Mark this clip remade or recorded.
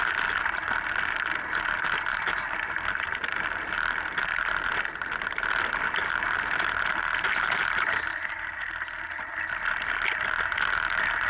recorded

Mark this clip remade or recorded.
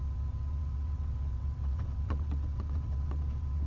remade